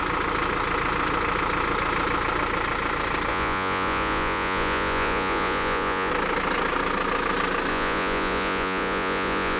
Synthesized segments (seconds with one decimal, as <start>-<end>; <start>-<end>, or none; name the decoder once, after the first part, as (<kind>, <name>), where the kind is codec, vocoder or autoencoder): 3.3-6.1 (vocoder, Vocos); 7.7-9.6